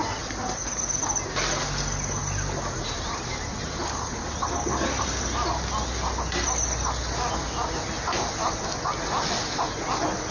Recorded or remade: recorded